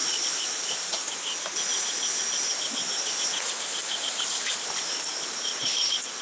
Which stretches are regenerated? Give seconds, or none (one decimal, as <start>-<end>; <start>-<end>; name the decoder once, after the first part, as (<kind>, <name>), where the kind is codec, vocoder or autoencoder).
0.0-0.9 (vocoder, BigVGAN v2); 3.8-6.2